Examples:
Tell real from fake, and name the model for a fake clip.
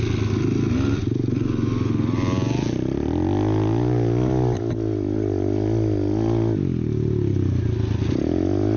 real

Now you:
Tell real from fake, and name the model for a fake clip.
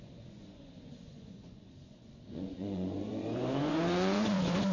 fake, vocoder, Vocos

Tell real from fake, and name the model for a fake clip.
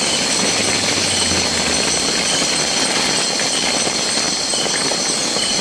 real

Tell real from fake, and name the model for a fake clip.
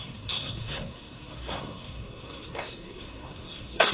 fake, codec, SNAC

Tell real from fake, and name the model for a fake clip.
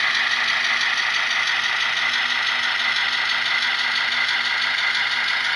real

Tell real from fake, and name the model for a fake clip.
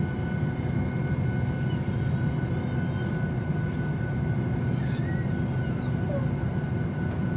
real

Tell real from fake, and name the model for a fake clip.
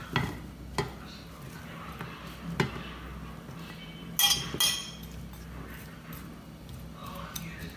real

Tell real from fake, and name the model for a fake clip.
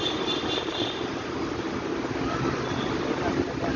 real